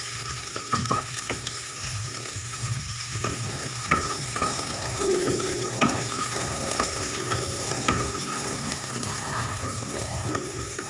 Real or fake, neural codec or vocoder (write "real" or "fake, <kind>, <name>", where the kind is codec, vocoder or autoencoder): fake, codec, SNAC